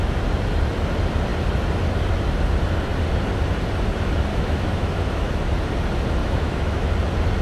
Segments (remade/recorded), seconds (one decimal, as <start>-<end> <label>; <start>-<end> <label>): 0.0-4.3 recorded; 4.3-5.3 remade; 5.3-6.2 recorded; 6.2-6.9 remade; 6.9-7.4 recorded